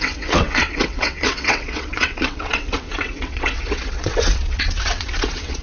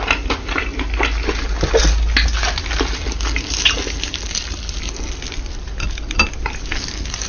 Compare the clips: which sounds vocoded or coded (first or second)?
first